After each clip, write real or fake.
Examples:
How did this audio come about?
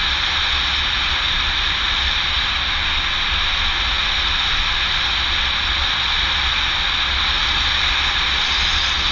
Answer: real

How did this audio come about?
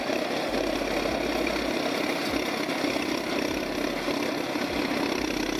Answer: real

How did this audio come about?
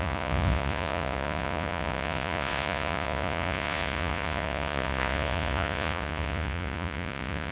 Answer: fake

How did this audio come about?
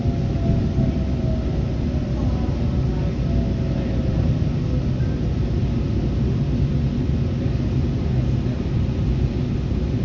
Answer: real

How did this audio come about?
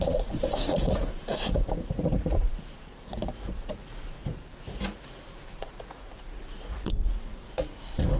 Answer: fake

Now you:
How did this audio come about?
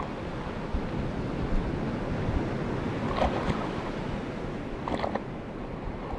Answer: real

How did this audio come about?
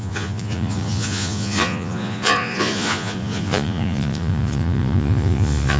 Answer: fake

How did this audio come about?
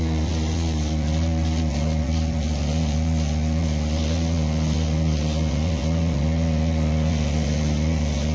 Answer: fake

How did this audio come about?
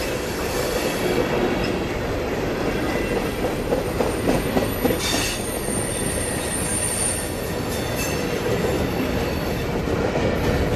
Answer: real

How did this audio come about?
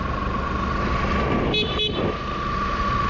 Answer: real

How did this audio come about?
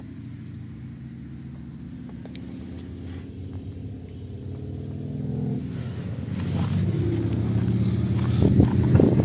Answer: real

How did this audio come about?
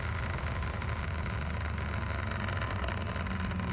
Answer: real